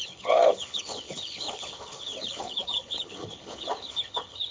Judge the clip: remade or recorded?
remade